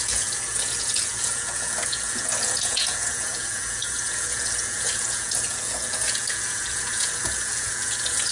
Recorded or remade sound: remade